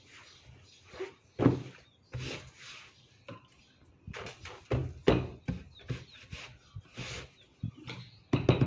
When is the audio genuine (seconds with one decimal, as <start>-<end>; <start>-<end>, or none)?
0.0-8.7